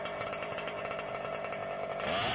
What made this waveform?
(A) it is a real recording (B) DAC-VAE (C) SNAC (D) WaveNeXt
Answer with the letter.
A